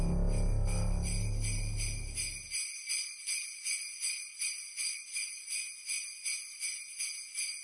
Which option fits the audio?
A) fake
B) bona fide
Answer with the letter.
B